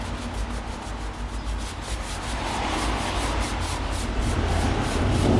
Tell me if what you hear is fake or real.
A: real